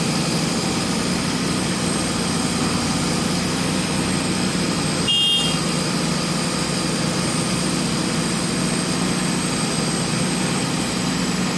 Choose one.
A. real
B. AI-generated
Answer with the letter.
A